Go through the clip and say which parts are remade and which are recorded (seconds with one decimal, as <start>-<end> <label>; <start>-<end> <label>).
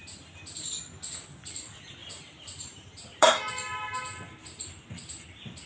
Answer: 0.0-0.8 remade; 0.8-2.0 recorded; 2.0-3.5 remade; 3.5-5.7 recorded